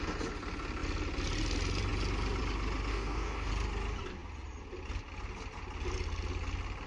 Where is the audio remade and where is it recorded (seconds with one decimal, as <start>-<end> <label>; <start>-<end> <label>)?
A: 0.0-2.9 recorded; 2.9-3.5 remade; 3.5-6.9 recorded